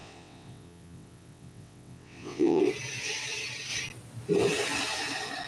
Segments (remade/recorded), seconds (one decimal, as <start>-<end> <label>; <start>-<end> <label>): 0.0-2.6 remade; 2.6-5.5 recorded